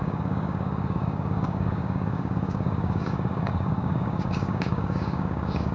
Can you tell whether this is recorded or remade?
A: remade